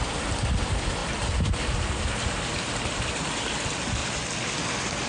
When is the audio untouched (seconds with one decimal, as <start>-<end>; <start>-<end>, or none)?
0.0-1.0; 3.1-4.0

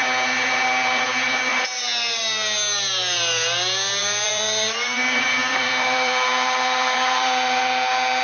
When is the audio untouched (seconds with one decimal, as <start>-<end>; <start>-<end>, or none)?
0.0-1.5; 2.2-4.0; 7.6-8.2

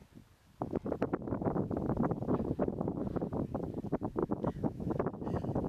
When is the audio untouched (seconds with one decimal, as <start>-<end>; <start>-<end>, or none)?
0.0-4.2; 5.0-5.7